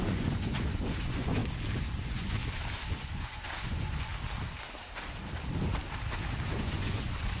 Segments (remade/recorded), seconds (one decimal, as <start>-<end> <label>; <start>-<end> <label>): 0.0-1.4 remade; 1.4-2.0 recorded; 2.0-2.4 remade; 2.4-3.0 recorded; 3.0-4.1 remade; 4.1-6.5 recorded; 6.5-7.4 remade